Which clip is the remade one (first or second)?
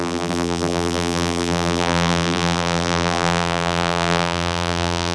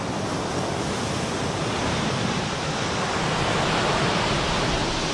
first